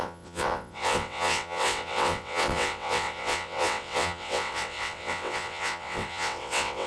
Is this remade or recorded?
remade